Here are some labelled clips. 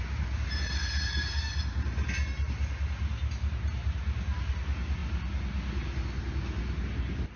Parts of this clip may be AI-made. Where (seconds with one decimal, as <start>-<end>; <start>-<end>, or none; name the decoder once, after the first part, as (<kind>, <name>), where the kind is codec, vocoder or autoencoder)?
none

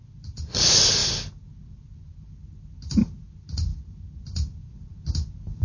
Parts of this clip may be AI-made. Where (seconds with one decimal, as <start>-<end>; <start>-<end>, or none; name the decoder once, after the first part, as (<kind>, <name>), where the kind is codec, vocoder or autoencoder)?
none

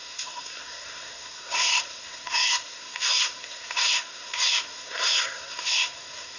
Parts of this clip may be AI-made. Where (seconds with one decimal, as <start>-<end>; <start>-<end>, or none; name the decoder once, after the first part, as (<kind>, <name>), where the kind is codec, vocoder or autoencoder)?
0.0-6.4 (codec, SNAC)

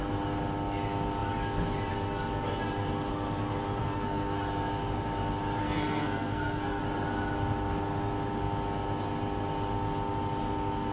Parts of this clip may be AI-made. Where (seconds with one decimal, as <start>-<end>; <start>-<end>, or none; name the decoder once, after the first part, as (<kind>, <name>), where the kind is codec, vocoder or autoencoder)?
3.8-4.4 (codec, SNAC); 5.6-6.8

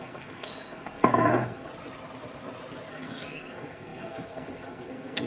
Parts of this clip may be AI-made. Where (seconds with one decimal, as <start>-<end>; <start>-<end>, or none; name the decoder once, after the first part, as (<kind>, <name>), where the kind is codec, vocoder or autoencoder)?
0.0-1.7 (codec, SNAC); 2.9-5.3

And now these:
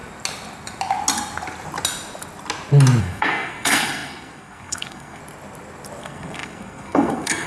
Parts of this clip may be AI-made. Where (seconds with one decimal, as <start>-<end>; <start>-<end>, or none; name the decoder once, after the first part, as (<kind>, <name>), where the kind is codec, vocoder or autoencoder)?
3.0-5.2 (codec, SNAC); 6.0-7.5